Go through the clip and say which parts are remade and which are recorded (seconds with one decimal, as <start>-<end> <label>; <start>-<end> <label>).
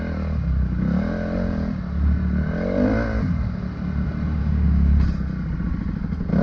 0.0-4.4 recorded; 4.4-4.9 remade; 4.9-6.4 recorded